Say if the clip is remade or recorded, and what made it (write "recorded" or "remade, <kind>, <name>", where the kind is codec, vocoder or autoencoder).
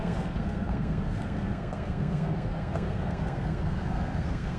remade, codec, SNAC